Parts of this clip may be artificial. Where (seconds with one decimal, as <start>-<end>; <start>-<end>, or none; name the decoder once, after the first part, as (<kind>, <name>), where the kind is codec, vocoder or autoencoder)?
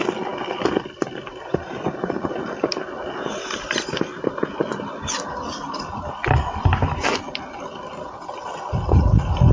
0.0-6.2 (vocoder, BigVGAN v2); 7.9-9.5